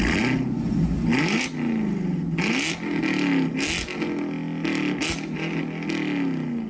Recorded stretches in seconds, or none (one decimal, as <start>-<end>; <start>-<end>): 0.0-6.7